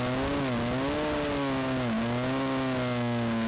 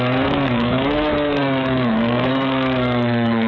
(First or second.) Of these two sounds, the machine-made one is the second